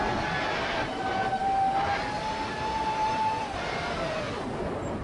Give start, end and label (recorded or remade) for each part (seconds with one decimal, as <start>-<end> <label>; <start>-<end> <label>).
0.0-5.0 recorded